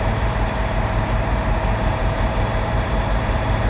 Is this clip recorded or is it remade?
remade